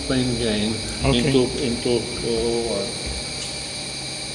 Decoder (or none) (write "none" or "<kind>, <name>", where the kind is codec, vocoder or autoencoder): none